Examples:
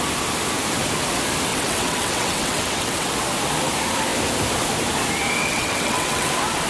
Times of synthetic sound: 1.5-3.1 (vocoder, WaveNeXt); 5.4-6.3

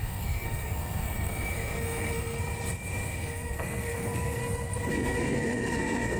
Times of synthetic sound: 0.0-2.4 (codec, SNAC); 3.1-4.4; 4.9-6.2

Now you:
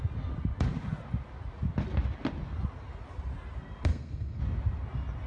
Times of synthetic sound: 3.9-4.4 (codec, SNAC)

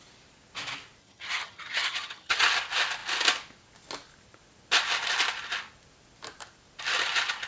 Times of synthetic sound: 1.0-2.5 (vocoder, HiFi-GAN)

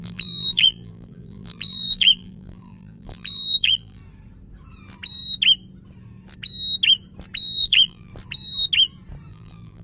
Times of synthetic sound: 0.0-4.0 (vocoder, BigVGAN v2); 7.4-8.1; 9.3-9.8

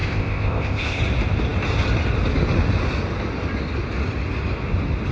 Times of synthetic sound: 0.0-1.0 (codec, ZipCodec)

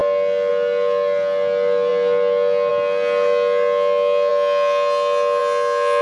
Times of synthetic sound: none

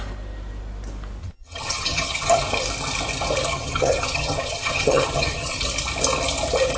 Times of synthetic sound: 1.2-2.4 (vocoder, HiFi-GAN); 3.5-5.6